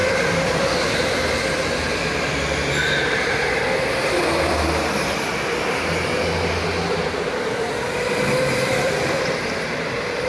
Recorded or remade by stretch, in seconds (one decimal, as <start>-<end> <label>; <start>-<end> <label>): 0.0-5.3 remade; 5.3-7.0 recorded; 7.0-10.3 remade